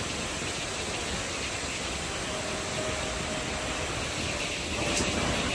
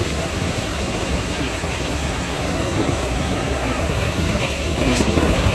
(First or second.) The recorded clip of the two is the first